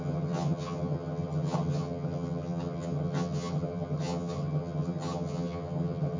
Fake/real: fake